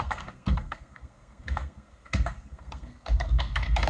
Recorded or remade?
remade